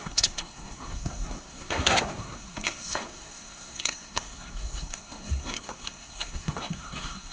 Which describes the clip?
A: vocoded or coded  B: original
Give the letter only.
A